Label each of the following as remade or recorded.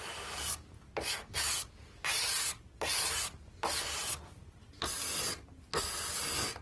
recorded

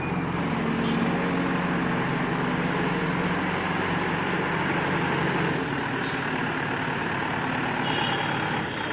recorded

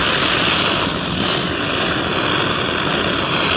recorded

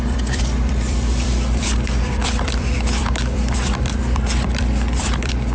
remade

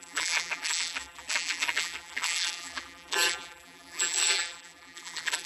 remade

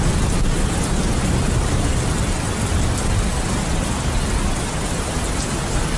recorded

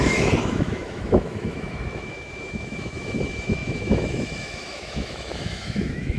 remade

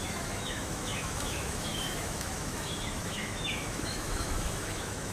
remade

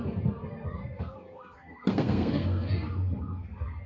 remade